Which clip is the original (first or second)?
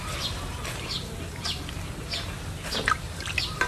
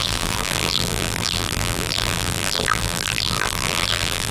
first